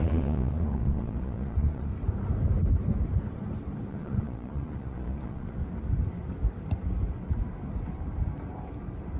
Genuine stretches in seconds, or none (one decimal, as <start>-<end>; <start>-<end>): 1.9-3.9; 5.6-9.2